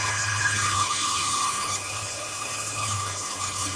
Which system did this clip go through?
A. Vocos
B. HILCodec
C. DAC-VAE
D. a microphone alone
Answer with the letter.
B